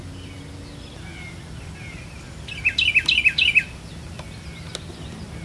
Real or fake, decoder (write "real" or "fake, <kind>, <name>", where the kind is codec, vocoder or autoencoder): real